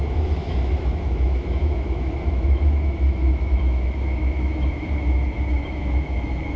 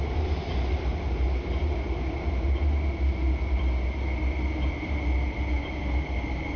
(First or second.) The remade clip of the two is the first